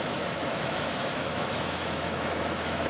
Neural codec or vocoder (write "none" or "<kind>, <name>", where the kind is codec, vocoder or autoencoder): autoencoder, DAC-VAE